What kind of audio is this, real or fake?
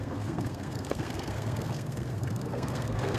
fake